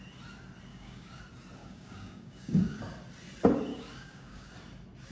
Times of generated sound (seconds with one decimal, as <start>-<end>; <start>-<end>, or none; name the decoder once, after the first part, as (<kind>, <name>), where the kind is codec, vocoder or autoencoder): 0.7-1.2 (codec, DAC); 1.6-2.8; 3.7-4.5